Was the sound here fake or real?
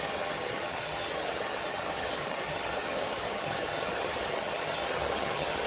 fake